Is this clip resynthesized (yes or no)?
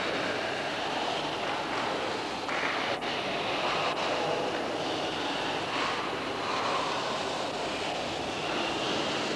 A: no